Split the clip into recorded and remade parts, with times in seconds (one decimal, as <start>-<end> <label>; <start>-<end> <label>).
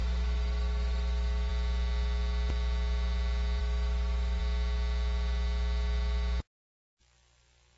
0.0-1.5 remade; 1.5-3.6 recorded; 3.6-4.4 remade; 4.4-7.8 recorded